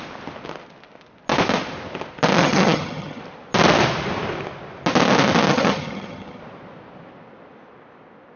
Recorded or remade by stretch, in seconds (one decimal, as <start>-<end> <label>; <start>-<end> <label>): 0.0-2.4 recorded; 2.4-3.2 remade; 3.2-5.5 recorded; 5.5-6.4 remade; 6.4-8.4 recorded

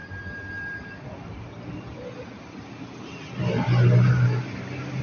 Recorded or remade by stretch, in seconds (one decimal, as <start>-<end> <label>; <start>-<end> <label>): 0.0-5.0 recorded

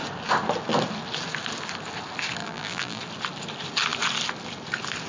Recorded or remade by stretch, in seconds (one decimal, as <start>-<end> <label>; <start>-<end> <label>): 0.0-2.4 recorded; 2.4-3.0 remade; 3.0-5.1 recorded